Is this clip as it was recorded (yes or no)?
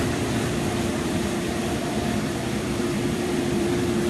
no